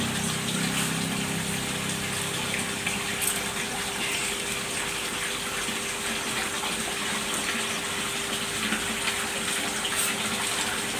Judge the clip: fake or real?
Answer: real